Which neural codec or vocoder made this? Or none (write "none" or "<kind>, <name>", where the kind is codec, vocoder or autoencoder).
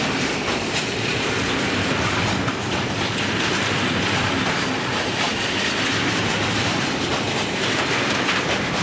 vocoder, BigVGAN v2